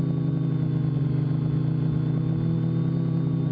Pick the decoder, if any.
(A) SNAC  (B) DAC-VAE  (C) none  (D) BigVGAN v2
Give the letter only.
C